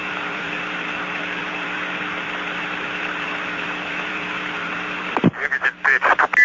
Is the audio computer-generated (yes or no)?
yes